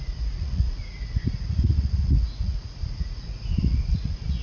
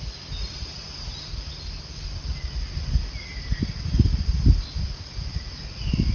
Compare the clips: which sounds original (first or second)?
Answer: second